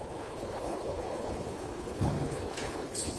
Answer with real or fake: fake